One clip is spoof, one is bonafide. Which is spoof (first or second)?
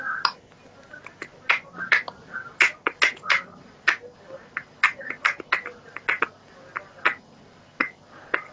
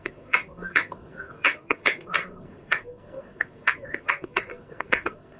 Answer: second